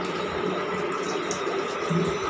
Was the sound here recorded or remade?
recorded